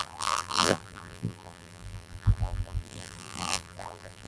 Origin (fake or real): fake